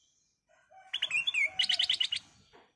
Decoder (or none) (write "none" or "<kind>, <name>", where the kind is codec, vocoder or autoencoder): none